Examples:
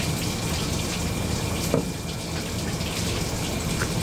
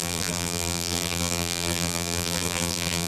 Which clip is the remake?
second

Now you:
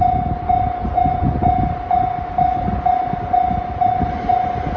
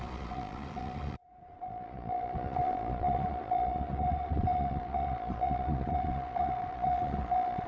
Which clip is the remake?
second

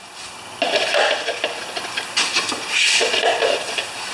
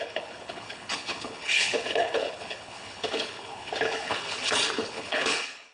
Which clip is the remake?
second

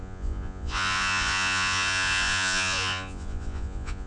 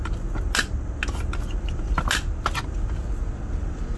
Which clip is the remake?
first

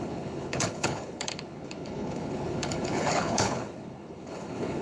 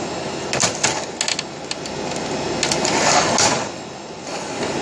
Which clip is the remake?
first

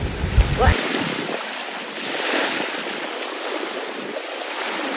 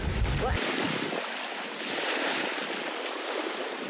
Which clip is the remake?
first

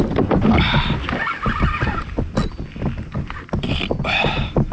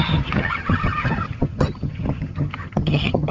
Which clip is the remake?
second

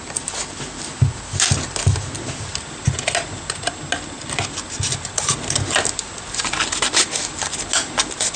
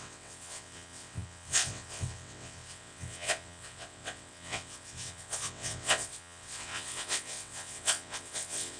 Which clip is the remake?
second